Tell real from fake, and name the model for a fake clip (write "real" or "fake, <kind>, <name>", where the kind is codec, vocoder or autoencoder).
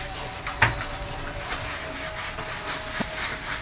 real